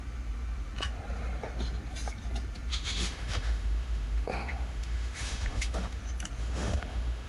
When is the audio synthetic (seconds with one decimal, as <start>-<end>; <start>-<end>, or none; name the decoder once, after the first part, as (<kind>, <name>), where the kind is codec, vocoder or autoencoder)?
2.7-6.0 (autoencoder, DAC-VAE); 6.4-7.3